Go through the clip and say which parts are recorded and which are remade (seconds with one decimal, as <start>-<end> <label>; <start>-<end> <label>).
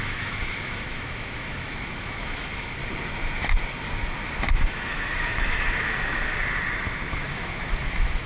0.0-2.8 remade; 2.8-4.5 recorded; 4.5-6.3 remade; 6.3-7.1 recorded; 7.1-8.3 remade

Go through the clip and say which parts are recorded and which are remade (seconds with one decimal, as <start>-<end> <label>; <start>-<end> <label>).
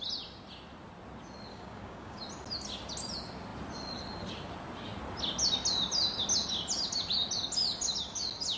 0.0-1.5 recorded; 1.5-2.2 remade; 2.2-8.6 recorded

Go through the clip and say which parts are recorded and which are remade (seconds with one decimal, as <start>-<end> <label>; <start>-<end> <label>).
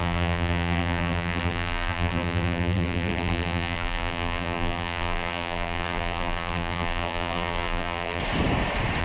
0.0-8.2 remade; 8.2-9.0 recorded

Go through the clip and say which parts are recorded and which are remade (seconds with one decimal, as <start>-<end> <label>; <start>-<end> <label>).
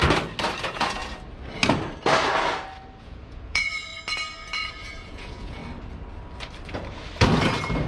0.0-0.6 recorded; 0.6-1.0 remade; 1.0-3.0 recorded; 3.0-3.9 remade; 3.9-4.7 recorded; 4.7-5.6 remade; 5.6-7.9 recorded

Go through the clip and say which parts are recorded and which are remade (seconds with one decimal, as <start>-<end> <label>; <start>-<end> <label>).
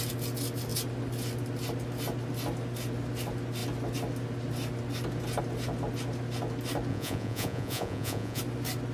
0.0-6.9 recorded; 6.9-8.4 remade; 8.4-8.9 recorded